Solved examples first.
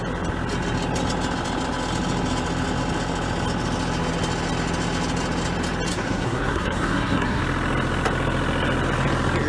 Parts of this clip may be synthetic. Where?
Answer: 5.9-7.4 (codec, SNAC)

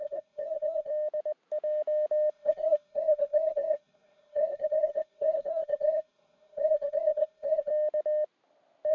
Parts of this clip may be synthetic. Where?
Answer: 0.0-0.9 (codec, SNAC); 2.3-7.7